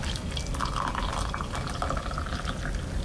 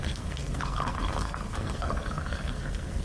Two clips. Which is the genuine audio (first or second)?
first